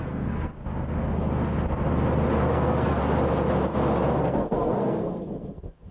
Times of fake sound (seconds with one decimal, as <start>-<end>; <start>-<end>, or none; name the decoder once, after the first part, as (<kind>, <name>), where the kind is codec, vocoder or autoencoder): 0.0-0.6 (codec, SNAC); 2.5-3.0; 4.2-5.9